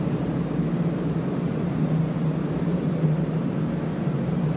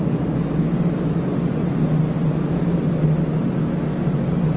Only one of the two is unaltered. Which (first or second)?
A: second